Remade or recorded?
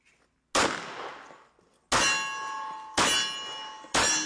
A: recorded